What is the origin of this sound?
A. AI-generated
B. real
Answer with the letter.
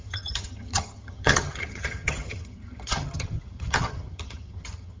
A